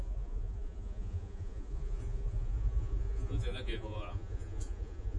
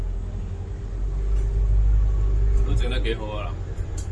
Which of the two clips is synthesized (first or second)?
first